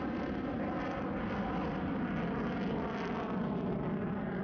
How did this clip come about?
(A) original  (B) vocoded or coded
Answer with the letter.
A